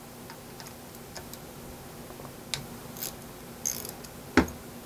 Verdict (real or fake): real